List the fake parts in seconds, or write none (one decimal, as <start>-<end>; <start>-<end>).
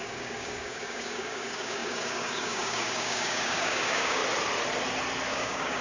0.0-4.2; 5.3-5.8